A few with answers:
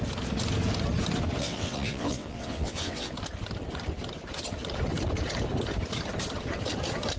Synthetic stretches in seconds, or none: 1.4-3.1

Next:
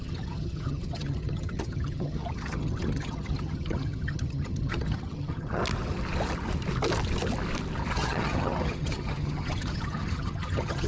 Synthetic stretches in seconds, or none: 0.0-5.6; 7.9-10.9

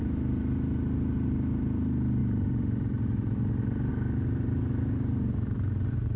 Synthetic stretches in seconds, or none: 2.2-3.9

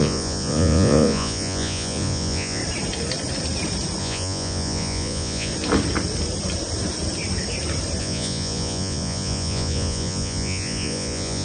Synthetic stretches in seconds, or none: 0.0-2.6; 4.0-5.5; 8.0-11.4

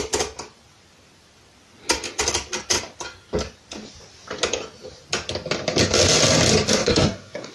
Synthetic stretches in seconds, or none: 6.8-7.5

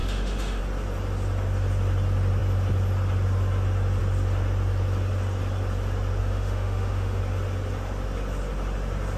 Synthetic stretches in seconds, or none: 0.0-0.6; 6.2-7.2

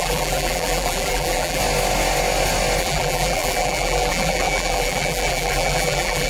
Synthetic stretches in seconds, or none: 0.0-1.6; 2.8-6.3